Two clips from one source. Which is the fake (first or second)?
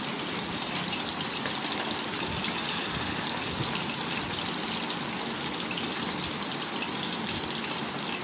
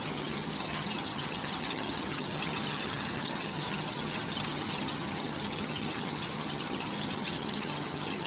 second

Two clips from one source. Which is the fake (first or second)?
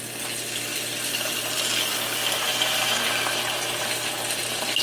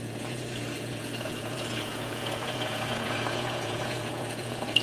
second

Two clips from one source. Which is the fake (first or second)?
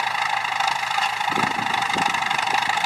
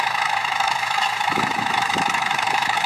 second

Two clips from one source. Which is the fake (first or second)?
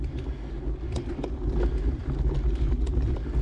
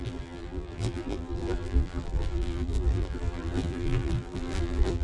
second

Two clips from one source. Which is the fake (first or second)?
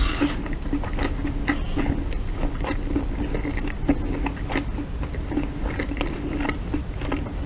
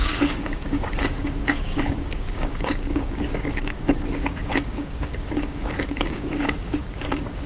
second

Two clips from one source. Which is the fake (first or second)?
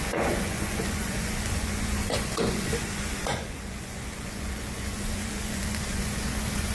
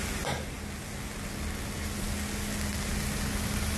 first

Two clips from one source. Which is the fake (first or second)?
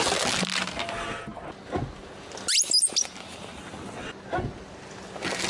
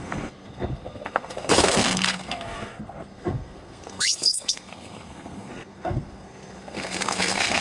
second